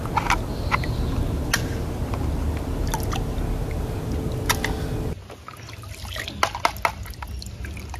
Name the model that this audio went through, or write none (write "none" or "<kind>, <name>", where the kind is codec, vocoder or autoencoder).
none